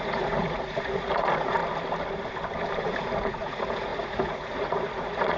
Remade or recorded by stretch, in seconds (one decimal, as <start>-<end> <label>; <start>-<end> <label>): 0.0-1.6 remade; 1.6-2.8 recorded; 2.8-5.4 remade